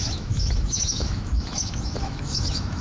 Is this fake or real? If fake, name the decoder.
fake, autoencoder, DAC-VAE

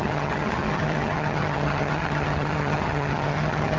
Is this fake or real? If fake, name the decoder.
fake, vocoder, HiFi-GAN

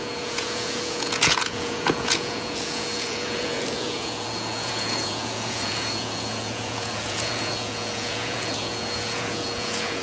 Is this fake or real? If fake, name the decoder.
fake, vocoder, Vocos